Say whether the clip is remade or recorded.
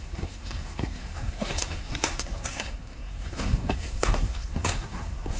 remade